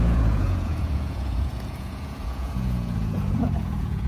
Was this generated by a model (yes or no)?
yes